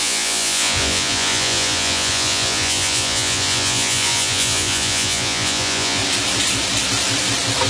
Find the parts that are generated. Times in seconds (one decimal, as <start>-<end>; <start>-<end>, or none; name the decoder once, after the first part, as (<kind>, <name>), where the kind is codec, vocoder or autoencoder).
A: 0.0-6.0 (vocoder, Vocos)